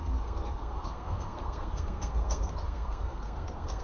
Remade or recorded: remade